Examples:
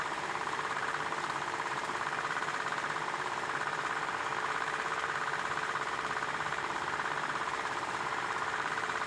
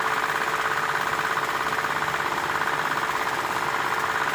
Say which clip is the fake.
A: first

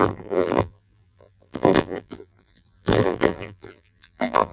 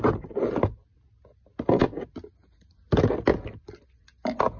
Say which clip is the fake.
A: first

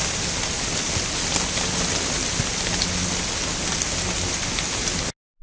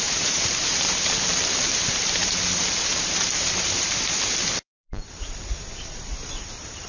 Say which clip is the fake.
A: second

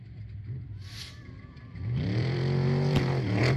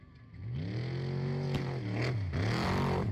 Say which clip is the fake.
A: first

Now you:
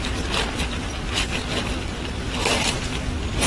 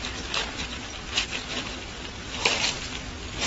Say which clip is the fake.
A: first